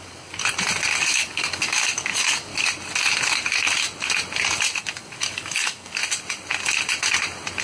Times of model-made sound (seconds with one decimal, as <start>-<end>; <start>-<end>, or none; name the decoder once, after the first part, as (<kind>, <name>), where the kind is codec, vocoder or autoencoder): 0.0-0.4 (codec, DAC); 1.0-2.5; 4.8-6.0